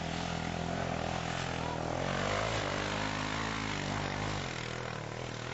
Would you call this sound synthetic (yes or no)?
no